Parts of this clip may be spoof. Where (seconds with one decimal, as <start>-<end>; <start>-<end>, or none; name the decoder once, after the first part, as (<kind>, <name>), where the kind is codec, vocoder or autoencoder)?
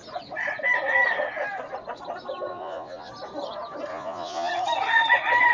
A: 2.5-3.1 (vocoder, Vocos); 3.9-4.5